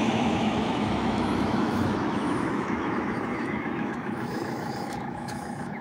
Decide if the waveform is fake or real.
fake